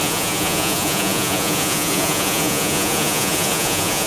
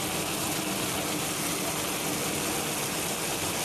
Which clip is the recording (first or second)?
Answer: second